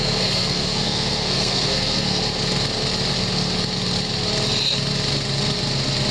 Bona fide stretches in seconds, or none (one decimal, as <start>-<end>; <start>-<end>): 2.2-6.1